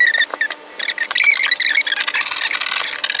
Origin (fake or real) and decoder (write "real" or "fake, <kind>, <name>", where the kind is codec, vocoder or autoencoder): real